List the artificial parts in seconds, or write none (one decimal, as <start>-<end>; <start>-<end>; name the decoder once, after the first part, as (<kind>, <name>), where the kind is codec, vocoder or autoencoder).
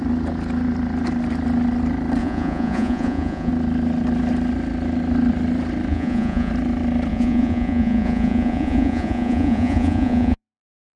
2.2-3.5 (vocoder, Vocos); 5.9-6.5; 7.1-11.0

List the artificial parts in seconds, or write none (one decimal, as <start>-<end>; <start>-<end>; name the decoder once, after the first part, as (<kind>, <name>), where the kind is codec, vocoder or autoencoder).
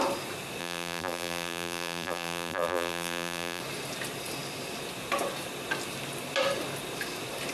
0.6-3.6 (vocoder, BigVGAN v2)